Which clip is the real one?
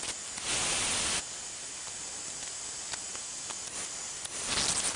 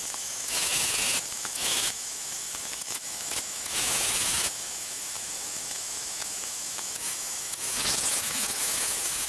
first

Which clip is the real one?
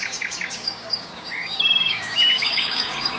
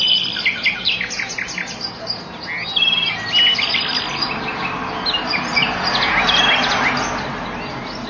second